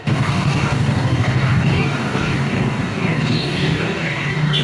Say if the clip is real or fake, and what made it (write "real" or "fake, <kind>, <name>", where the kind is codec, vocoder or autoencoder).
fake, codec, DAC